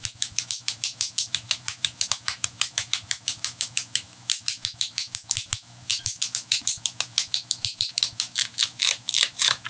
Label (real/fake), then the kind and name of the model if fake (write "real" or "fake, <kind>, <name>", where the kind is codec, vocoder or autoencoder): fake, autoencoder, DAC-VAE